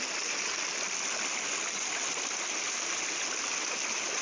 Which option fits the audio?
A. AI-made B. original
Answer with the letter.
B